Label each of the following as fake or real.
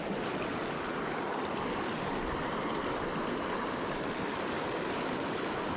real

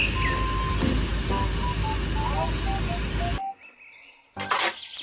real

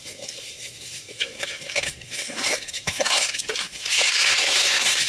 fake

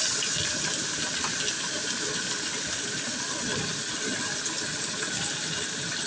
real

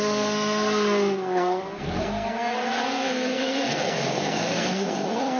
fake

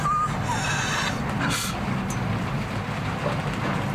real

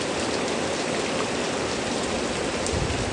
real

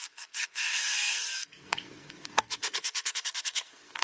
fake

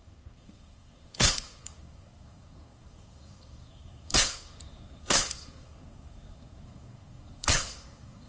fake